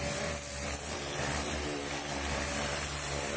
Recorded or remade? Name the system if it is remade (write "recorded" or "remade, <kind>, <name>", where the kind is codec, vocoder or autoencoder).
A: recorded